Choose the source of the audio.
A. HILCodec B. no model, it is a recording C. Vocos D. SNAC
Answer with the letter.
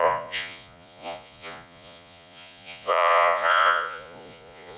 C